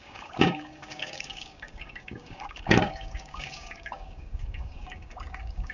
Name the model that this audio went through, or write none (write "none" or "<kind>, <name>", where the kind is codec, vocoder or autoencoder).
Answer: codec, DAC